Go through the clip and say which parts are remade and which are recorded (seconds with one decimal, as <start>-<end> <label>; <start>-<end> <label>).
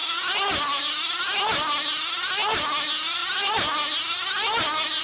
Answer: 0.0-5.0 recorded